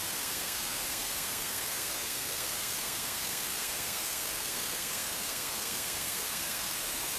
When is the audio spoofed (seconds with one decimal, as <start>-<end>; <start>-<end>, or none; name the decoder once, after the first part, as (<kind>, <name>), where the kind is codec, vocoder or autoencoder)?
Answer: 0.0-7.2 (codec, SNAC)